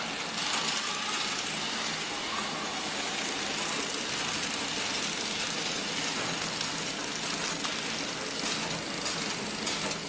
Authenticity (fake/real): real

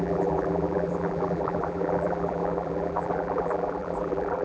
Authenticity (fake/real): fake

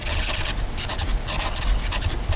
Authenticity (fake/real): real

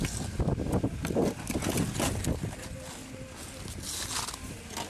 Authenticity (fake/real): real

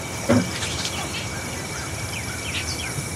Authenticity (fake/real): real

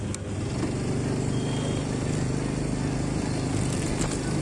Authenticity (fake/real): real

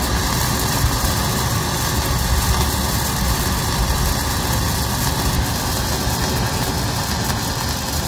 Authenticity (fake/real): real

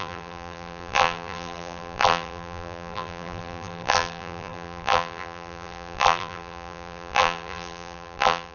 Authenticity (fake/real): fake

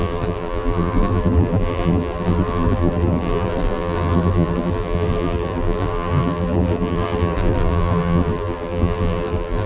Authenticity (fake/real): fake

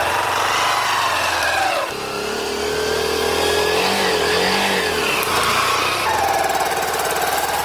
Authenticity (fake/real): real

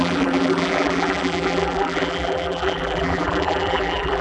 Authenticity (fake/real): fake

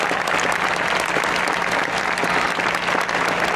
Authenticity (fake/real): real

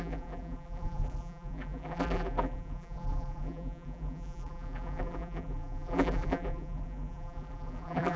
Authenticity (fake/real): fake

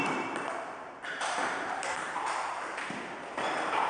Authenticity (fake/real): fake